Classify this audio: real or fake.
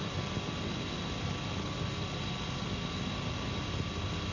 real